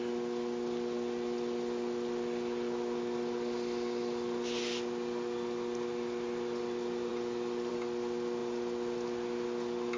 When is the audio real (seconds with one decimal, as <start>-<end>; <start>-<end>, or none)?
0.0-10.0